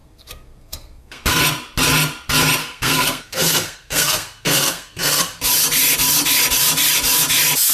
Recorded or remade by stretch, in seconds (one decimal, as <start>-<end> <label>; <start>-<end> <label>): 0.0-1.4 remade; 1.4-2.6 recorded; 2.6-5.2 remade; 5.2-7.7 recorded